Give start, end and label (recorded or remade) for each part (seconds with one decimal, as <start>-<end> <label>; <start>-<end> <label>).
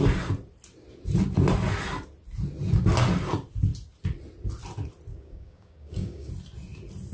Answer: 0.0-5.1 recorded; 5.1-6.3 remade; 6.3-7.1 recorded